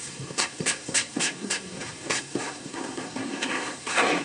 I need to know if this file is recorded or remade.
remade